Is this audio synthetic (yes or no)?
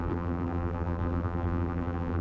yes